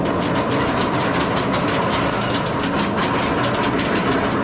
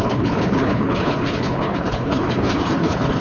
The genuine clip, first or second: first